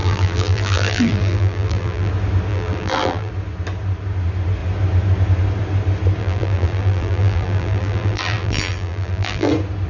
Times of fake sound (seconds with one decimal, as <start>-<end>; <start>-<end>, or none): 0.0-2.1; 2.5-3.3; 6.2-9.5